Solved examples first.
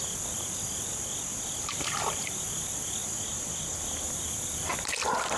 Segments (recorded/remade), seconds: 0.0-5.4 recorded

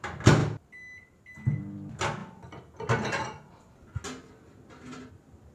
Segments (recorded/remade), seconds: 0.0-5.5 recorded

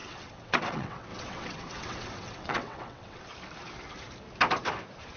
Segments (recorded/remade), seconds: 0.0-3.3 remade; 3.3-5.2 recorded

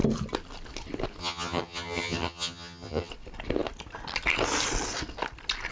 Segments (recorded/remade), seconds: 0.0-1.2 recorded; 1.2-3.1 remade; 3.1-5.7 recorded

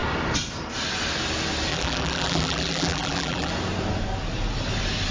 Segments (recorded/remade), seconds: 0.0-1.7 recorded; 1.7-3.5 remade; 3.5-5.1 recorded